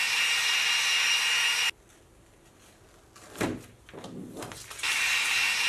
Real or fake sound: real